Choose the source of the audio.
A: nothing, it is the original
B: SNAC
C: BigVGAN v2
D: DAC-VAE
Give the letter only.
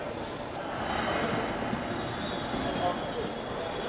A